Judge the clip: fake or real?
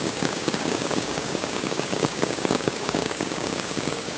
fake